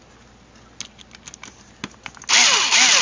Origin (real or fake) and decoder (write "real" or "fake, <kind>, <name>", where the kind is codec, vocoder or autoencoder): real